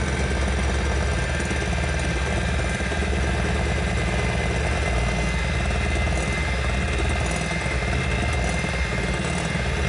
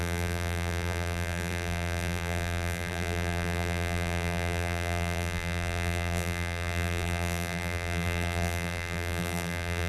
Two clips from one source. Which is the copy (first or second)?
second